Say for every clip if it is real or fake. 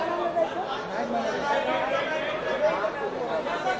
real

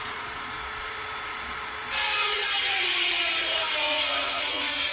fake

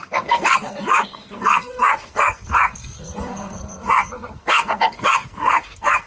fake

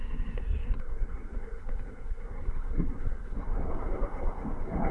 fake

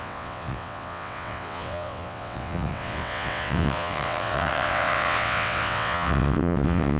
fake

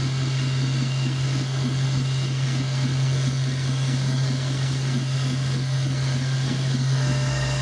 fake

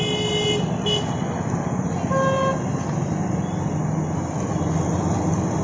real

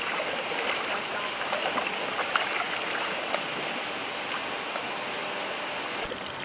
real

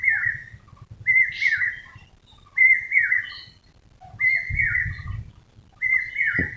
real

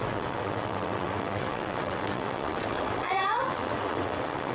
fake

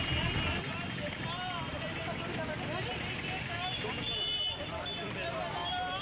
real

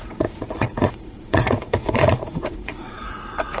fake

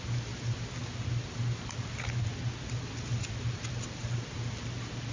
real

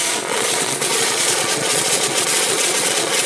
fake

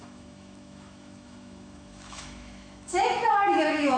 fake